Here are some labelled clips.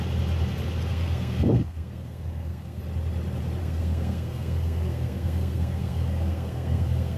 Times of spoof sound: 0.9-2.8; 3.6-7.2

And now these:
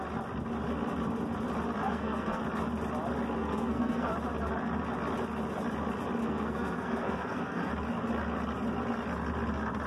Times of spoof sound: 1.8-2.4; 3.4-4.1; 6.2-7.7

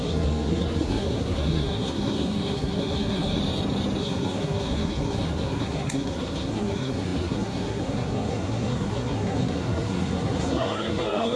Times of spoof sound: 0.0-3.4; 4.0-11.4